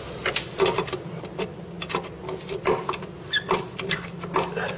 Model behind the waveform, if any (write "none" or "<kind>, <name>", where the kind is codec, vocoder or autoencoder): none